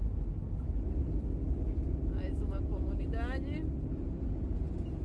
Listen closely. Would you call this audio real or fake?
real